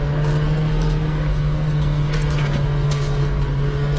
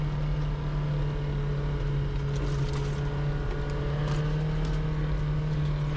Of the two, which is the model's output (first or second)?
first